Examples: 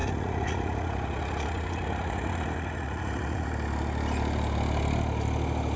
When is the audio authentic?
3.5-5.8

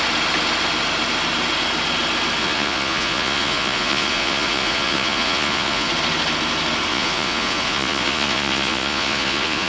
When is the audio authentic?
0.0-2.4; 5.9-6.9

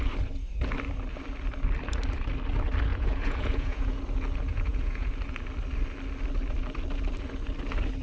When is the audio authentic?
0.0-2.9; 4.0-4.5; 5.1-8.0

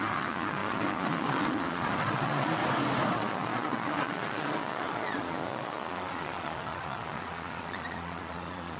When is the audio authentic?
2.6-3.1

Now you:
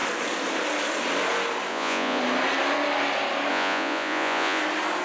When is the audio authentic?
0.0-1.7; 2.2-3.5; 4.6-5.0

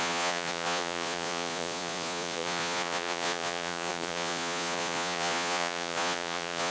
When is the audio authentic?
none

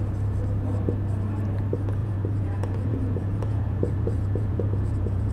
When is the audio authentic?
0.0-2.0

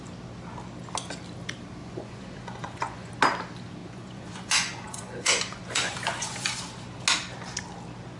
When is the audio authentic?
0.0-1.8; 3.1-3.8; 6.6-8.2